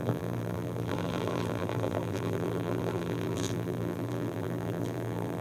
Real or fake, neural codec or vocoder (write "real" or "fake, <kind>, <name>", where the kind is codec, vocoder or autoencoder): fake, vocoder, BigVGAN v2